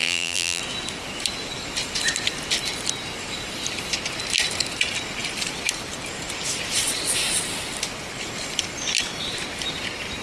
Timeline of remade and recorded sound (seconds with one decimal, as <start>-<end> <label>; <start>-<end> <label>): 0.0-0.6 remade; 0.6-10.2 recorded